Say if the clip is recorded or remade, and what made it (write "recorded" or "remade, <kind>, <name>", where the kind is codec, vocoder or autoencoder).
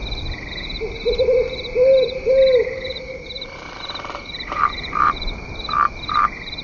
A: remade, vocoder, BigVGAN v2